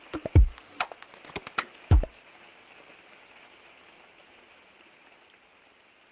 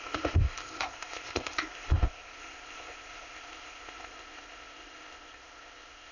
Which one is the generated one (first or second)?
second